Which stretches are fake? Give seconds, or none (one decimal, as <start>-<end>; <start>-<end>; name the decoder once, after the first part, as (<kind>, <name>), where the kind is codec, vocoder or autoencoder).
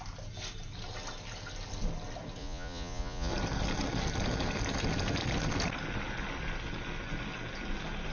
2.4-3.3 (vocoder, Vocos)